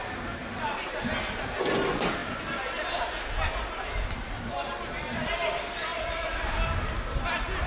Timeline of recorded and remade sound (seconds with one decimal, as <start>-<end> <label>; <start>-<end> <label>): 0.0-0.4 recorded; 0.4-0.9 remade; 0.9-7.7 recorded